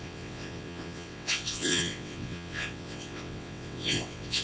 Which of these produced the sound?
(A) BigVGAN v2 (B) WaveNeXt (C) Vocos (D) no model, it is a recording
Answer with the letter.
B